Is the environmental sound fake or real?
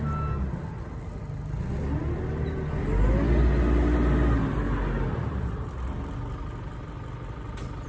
real